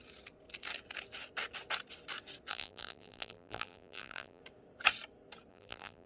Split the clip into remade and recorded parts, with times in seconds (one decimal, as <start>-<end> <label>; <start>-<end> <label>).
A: 0.0-2.5 recorded; 2.5-4.4 remade; 4.4-5.5 recorded; 5.5-6.1 remade